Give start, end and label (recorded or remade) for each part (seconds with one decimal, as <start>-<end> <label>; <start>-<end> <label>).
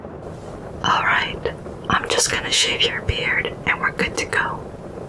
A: 0.0-2.3 recorded; 2.3-3.3 remade; 3.3-5.1 recorded